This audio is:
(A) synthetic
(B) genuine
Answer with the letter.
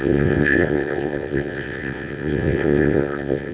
A